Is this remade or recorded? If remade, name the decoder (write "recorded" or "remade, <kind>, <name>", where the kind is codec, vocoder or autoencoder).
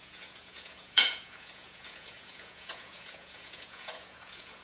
remade, vocoder, Vocos